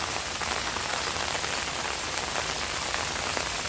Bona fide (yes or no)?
yes